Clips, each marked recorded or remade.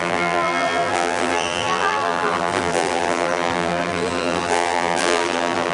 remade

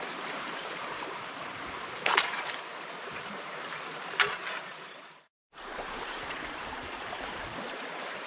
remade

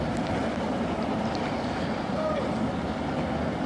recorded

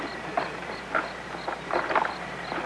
recorded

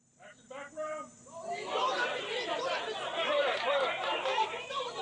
remade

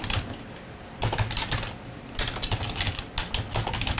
recorded